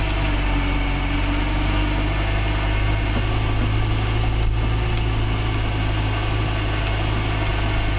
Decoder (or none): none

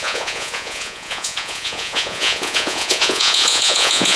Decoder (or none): vocoder, Vocos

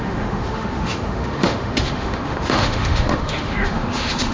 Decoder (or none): autoencoder, DAC-VAE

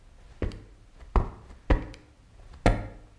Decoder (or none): none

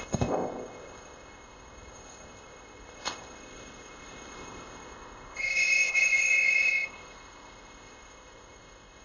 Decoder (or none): codec, ZipCodec